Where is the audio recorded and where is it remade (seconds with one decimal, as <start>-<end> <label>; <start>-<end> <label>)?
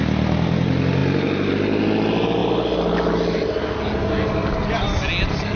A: 0.0-5.6 recorded